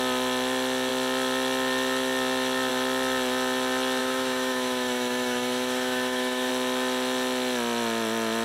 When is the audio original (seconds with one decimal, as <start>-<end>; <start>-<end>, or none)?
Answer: 0.0-4.0; 6.5-8.4